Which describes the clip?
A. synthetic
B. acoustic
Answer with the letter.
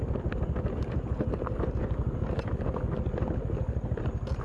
B